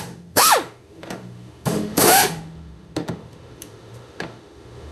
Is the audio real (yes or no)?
no